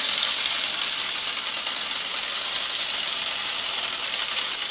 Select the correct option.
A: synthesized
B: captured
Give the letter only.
B